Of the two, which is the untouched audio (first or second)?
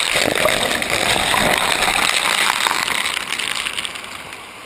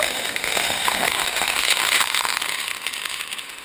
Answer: first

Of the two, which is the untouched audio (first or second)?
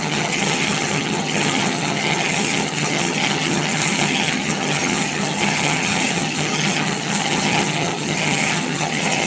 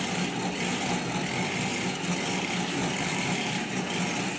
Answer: second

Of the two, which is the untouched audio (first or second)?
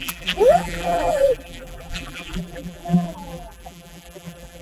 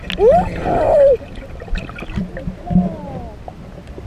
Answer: second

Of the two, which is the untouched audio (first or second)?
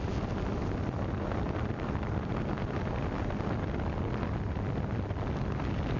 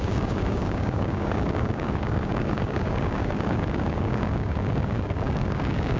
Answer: first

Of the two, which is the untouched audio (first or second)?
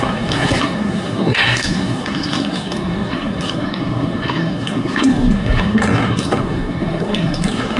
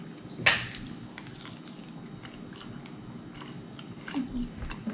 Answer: second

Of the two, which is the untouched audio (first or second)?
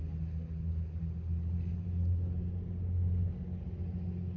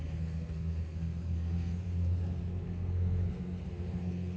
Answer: first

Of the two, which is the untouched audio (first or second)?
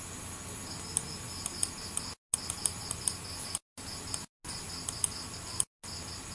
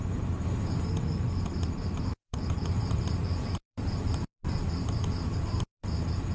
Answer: first